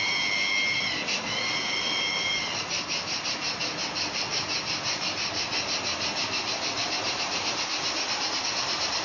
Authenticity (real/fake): real